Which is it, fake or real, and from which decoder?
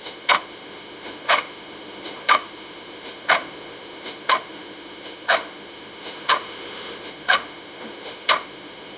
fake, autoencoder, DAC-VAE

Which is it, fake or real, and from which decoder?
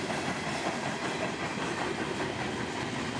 real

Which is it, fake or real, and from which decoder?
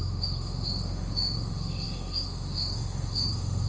fake, autoencoder, DAC-VAE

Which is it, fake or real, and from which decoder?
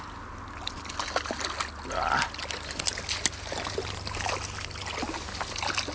real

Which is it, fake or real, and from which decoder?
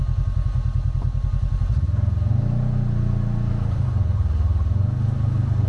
real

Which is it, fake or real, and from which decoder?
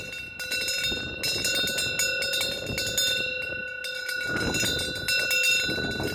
real